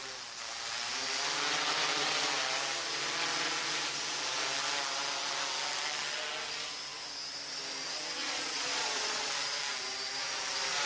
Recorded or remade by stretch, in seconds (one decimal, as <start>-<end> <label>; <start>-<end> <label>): 0.0-8.2 recorded; 8.2-9.3 remade; 9.3-10.9 recorded